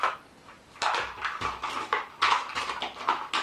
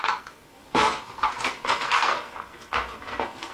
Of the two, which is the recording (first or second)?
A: first